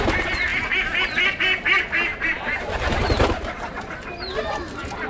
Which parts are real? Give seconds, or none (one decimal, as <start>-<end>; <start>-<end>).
0.0-2.1; 3.0-5.1